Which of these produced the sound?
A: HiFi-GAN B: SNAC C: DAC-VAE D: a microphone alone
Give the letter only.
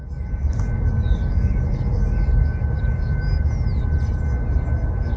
D